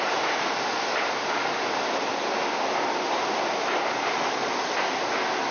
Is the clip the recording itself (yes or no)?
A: yes